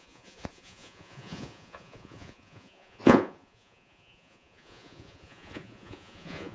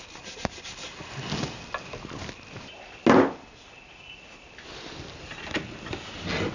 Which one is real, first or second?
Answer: second